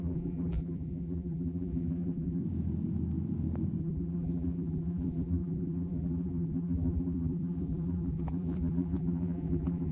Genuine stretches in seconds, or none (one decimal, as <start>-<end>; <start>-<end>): 2.4-3.8